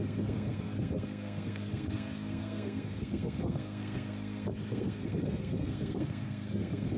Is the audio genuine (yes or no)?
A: no